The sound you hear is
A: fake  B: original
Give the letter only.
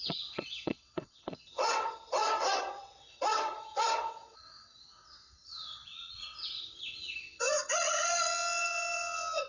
A